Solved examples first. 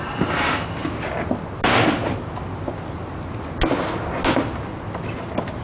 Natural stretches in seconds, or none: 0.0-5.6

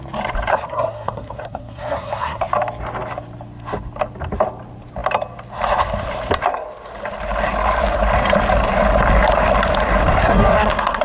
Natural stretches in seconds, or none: 0.0-0.5; 2.5-10.2

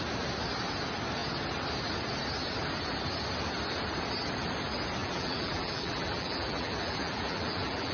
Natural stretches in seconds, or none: 0.0-5.0

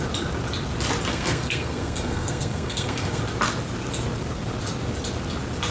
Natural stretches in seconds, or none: 0.0-1.1; 3.2-5.7

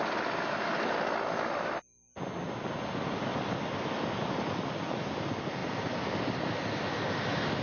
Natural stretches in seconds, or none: 0.0-7.6